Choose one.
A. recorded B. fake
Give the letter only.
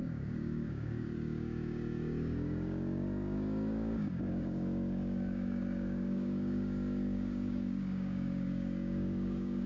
B